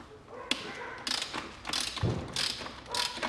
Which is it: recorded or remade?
recorded